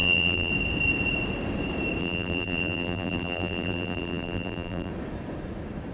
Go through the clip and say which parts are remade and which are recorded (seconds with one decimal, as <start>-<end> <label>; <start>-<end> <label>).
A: 0.0-0.5 remade; 0.5-2.0 recorded; 2.0-4.9 remade; 4.9-5.9 recorded